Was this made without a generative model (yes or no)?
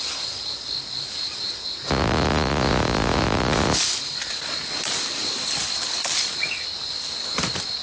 yes